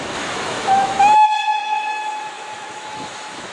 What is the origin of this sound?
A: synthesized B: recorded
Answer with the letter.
A